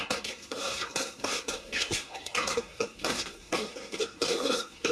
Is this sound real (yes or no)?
no